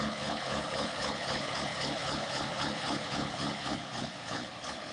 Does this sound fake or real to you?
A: fake